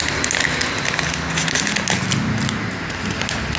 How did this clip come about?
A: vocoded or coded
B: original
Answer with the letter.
B